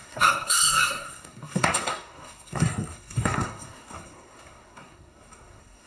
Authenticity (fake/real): fake